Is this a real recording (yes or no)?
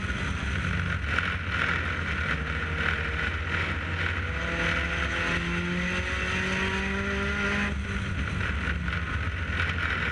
yes